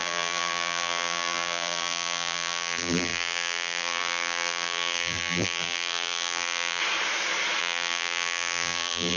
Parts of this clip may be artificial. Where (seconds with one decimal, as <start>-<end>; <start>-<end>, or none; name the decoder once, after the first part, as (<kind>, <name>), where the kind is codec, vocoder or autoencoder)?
0.0-6.8 (vocoder, BigVGAN v2); 7.6-9.2